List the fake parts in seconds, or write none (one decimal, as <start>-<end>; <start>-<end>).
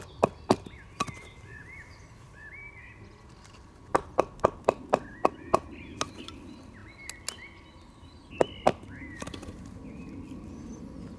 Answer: none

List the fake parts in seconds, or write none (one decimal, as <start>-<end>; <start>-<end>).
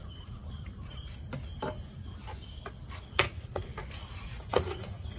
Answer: 0.0-0.4; 3.0-3.7; 4.5-5.2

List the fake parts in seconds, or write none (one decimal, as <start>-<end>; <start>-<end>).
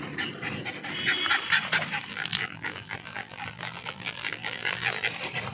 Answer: 2.1-5.1